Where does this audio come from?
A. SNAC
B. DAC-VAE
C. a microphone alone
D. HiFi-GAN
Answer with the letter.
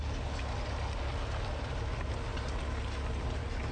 C